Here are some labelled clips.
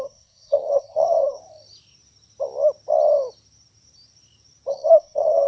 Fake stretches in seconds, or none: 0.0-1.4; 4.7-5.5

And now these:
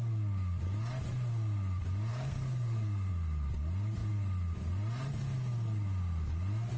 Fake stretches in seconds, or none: 2.1-3.1

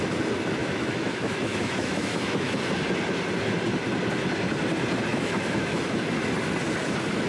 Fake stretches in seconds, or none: 0.6-2.6; 5.1-6.0

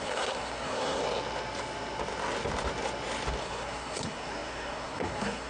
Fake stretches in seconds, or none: 0.0-1.0; 3.4-5.5

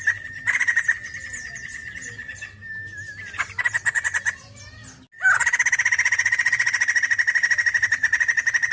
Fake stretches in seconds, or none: none

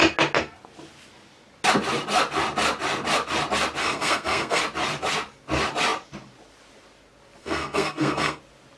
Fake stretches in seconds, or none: 3.8-4.6; 7.4-8.4

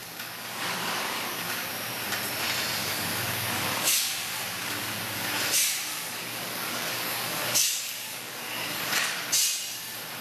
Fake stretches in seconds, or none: 0.0-1.7; 2.8-5.4; 5.9-9.3

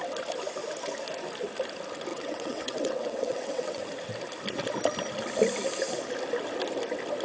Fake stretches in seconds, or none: 2.1-3.8